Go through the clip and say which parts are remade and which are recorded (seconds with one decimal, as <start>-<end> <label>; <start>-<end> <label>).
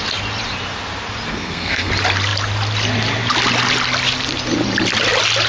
0.0-1.3 recorded; 1.3-1.9 remade; 1.9-5.5 recorded